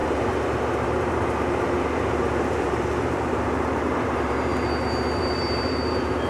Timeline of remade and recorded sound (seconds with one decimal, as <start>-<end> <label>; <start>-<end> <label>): 0.0-4.5 remade; 4.5-5.2 recorded; 5.2-6.3 remade